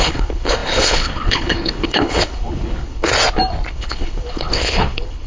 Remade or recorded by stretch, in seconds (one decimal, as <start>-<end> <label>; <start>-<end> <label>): 0.0-3.1 remade; 3.1-3.7 recorded; 3.7-5.3 remade